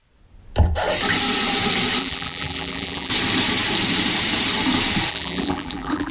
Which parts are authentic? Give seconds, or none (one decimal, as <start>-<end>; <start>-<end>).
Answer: 0.0-2.0; 3.1-5.1